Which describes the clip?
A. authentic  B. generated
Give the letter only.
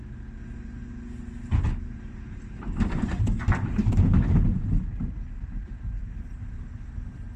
A